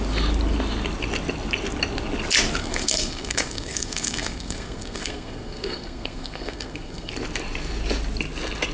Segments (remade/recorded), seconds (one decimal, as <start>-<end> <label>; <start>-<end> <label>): 0.0-2.6 recorded; 2.6-7.1 remade; 7.1-8.7 recorded